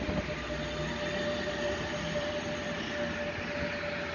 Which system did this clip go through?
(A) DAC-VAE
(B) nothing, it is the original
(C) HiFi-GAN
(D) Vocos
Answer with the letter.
B